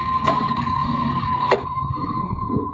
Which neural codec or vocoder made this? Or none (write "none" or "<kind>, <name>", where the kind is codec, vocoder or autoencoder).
codec, SNAC